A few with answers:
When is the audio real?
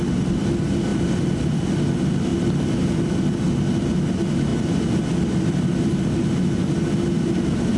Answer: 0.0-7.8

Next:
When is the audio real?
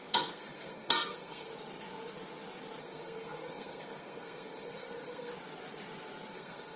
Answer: 1.5-2.8; 5.3-6.3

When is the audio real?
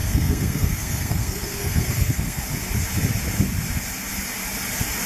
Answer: 2.4-5.1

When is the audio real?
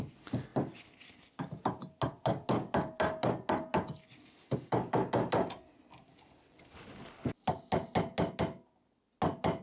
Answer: 0.0-9.6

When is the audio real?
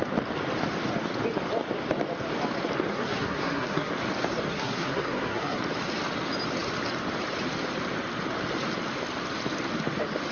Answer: 0.0-2.9; 3.9-4.5; 5.6-10.3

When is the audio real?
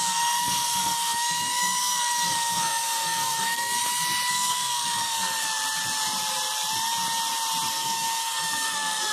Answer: 3.8-4.3; 5.5-7.7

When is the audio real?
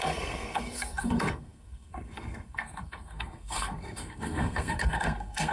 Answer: none